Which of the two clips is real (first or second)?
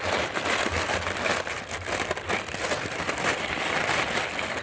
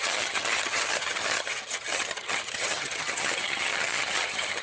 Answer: first